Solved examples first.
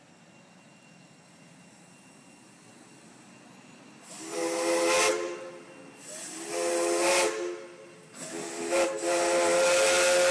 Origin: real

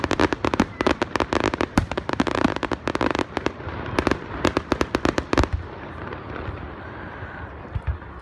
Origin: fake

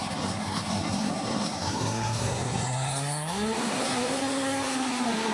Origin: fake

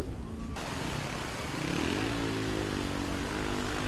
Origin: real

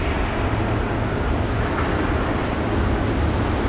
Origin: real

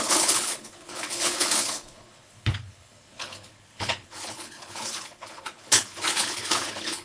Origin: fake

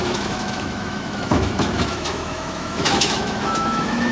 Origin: fake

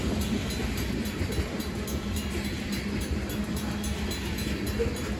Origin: real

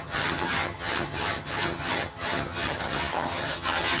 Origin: fake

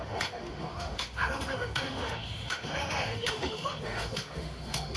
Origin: fake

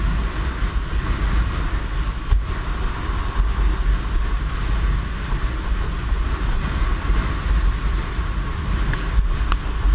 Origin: real